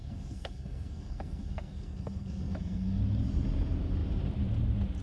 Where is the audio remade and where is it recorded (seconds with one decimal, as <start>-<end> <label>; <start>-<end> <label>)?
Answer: 0.0-3.0 remade; 3.0-5.0 recorded